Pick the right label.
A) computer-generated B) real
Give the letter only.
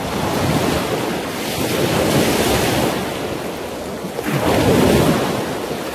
B